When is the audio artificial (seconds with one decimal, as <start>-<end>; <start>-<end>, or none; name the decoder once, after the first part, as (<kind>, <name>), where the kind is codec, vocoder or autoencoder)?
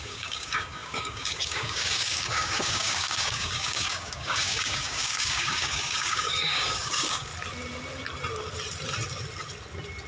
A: 0.0-7.3 (codec, DAC)